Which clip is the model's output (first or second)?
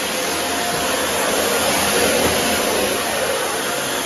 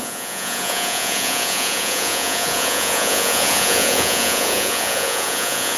second